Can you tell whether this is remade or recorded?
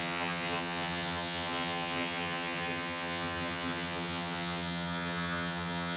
remade